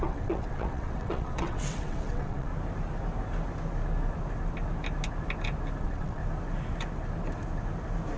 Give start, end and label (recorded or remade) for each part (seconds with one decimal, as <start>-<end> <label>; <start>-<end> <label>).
0.0-2.5 remade; 2.5-5.8 recorded; 5.8-6.2 remade; 6.2-8.2 recorded